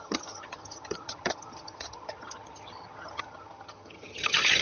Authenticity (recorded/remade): remade